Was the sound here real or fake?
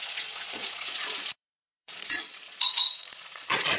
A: fake